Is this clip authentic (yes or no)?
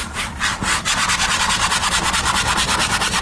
yes